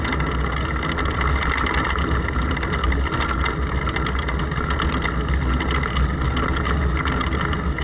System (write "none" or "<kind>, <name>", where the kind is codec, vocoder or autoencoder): none